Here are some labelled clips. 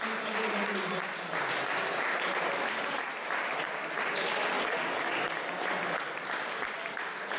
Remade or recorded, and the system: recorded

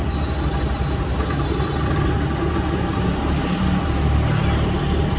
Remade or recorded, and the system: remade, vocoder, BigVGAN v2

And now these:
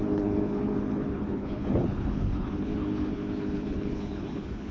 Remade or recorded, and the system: remade, codec, HILCodec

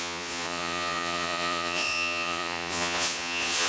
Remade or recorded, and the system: remade, vocoder, Vocos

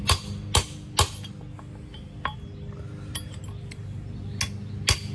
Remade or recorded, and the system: recorded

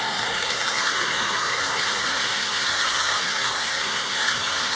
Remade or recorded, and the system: remade, codec, SNAC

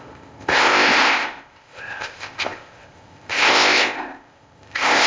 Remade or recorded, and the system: remade, codec, ZipCodec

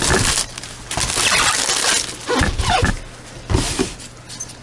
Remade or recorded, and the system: recorded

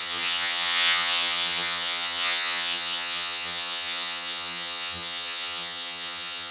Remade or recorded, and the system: remade, vocoder, HiFi-GAN